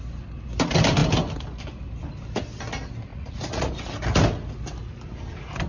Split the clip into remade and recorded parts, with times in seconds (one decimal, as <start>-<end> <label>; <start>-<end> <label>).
0.0-3.1 recorded; 3.1-3.7 remade; 3.7-5.7 recorded